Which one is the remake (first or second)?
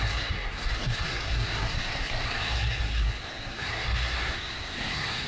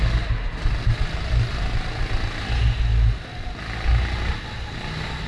first